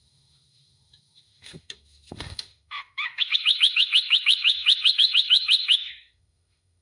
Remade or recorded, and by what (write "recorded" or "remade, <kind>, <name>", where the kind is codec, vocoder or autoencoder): remade, autoencoder, DAC-VAE